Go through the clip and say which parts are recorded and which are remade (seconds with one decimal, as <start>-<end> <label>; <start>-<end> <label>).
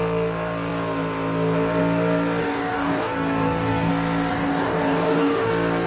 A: 0.0-2.4 recorded; 2.4-3.9 remade; 3.9-4.3 recorded; 4.3-5.5 remade; 5.5-5.9 recorded